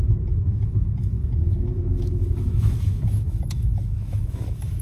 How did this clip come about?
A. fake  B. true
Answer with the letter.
A